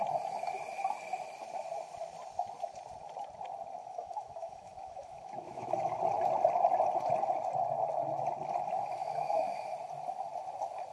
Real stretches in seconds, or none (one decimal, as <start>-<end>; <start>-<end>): 0.0-3.8; 6.0-9.0; 9.6-10.9